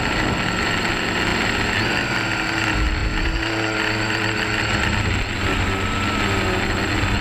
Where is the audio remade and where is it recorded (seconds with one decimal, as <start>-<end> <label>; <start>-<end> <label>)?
0.0-7.2 recorded